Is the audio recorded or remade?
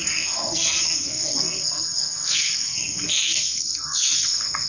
remade